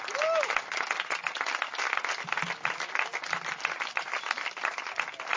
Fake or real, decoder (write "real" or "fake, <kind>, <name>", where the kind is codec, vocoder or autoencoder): real